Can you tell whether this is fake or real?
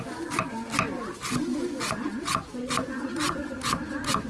real